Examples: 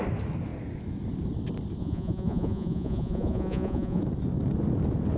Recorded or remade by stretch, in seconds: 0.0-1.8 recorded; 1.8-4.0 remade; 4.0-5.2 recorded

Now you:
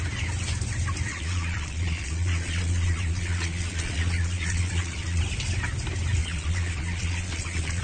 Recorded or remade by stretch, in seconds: 0.0-1.1 recorded; 1.1-5.2 remade; 5.2-6.2 recorded; 6.2-7.8 remade

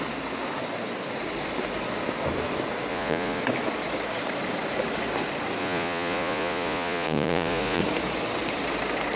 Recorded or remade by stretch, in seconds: 0.0-2.9 recorded; 2.9-3.4 remade; 3.4-5.6 recorded; 5.6-7.8 remade; 7.8-9.2 recorded

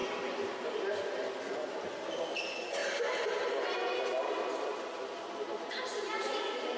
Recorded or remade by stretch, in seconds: 0.0-6.8 recorded

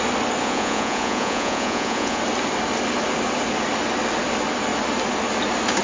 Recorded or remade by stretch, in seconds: 0.0-0.4 recorded; 0.4-2.2 remade; 2.2-5.8 recorded